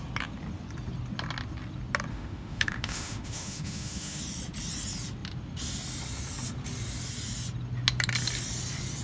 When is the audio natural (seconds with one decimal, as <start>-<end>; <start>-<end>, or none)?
0.0-2.1; 4.2-9.0

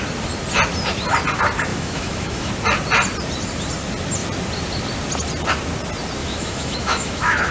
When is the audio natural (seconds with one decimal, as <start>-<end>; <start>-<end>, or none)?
0.0-1.7; 2.5-6.2